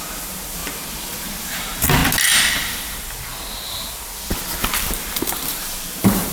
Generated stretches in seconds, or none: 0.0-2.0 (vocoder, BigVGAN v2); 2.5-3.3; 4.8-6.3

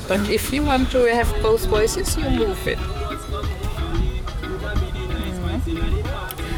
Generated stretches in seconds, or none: 0.0-1.3 (autoencoder, DAC-VAE)